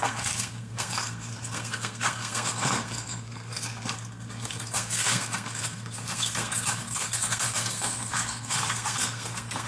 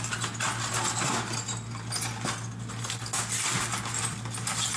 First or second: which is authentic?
second